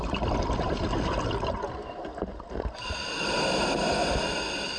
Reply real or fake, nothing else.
real